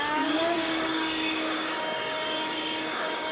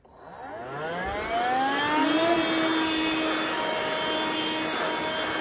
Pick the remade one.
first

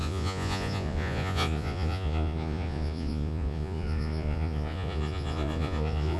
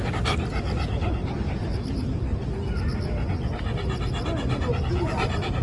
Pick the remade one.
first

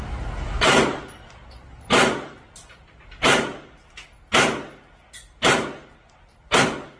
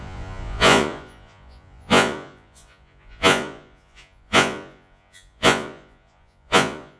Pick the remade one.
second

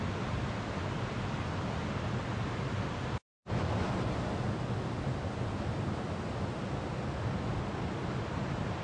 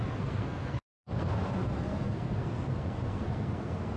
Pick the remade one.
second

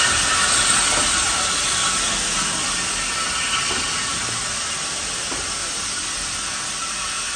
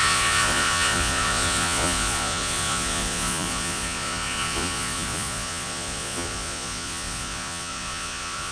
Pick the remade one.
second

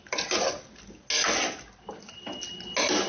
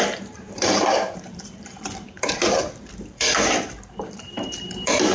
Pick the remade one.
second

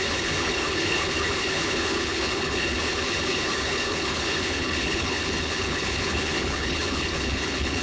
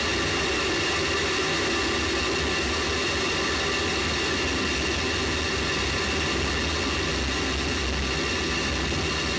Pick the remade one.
first